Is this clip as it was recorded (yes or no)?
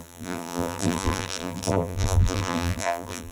no